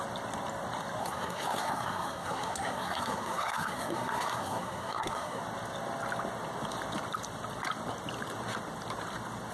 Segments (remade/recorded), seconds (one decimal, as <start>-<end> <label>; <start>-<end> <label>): 0.0-1.0 recorded; 1.0-5.4 remade; 5.4-9.5 recorded

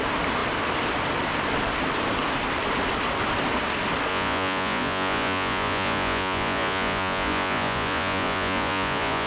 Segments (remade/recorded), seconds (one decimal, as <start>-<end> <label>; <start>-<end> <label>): 0.0-4.1 recorded; 4.1-9.3 remade

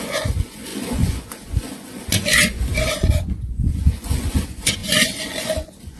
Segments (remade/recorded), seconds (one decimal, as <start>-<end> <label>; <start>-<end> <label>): 0.0-6.0 remade